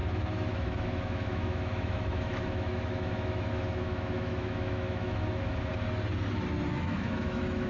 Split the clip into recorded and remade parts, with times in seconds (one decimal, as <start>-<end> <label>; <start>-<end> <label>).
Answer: 0.0-5.7 remade; 5.7-6.7 recorded; 6.7-7.7 remade